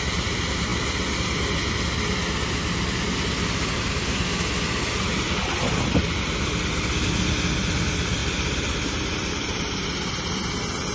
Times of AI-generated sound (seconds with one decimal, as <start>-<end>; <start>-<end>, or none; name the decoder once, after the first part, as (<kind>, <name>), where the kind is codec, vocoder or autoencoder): 8.2-9.6 (vocoder, BigVGAN v2)